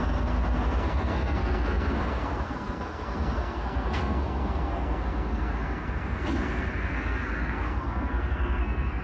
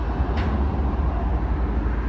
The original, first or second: second